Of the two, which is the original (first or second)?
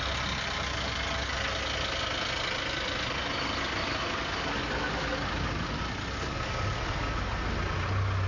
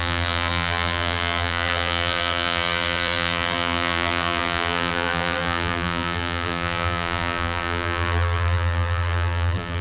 first